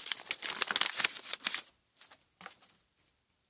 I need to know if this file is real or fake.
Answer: real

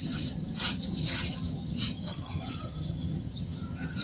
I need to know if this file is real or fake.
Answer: fake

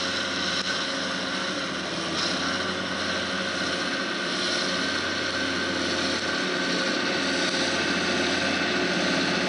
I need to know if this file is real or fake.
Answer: real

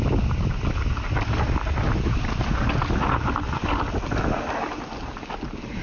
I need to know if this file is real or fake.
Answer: real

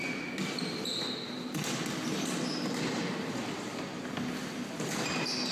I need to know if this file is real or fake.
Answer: real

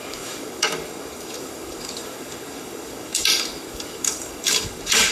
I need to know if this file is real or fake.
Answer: fake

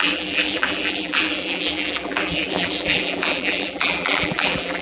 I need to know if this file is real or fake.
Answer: fake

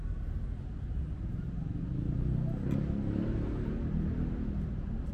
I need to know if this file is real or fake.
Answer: real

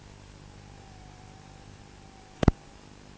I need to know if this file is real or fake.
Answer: real